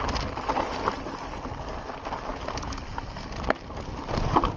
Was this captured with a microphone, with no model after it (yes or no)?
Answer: yes